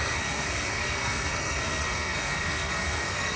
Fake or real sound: fake